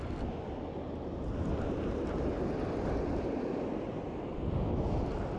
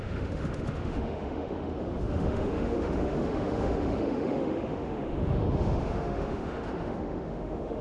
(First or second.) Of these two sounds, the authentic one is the first